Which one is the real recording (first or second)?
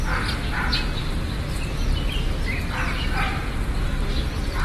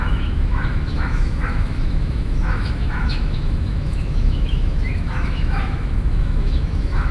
first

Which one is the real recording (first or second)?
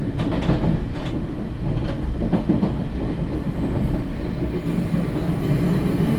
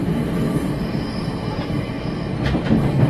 first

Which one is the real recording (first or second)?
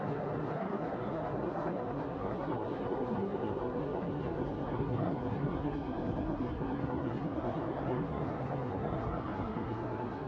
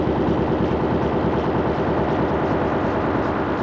second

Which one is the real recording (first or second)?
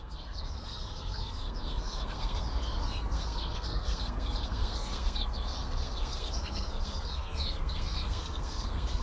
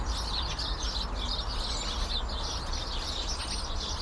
second